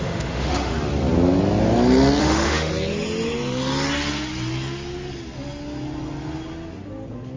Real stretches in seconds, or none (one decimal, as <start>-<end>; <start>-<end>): 0.7-2.2; 2.7-7.4